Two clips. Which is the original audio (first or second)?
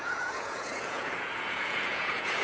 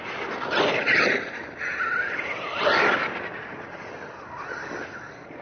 second